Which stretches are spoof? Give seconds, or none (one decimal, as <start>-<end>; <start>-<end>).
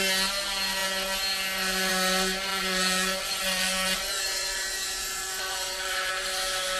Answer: 2.5-6.1